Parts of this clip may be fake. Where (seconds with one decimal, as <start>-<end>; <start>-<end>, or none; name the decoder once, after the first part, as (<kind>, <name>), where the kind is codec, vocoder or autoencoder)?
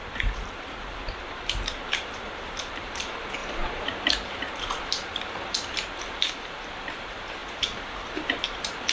0.0-8.9 (vocoder, BigVGAN v2)